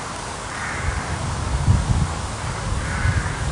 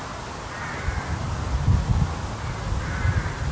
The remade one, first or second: first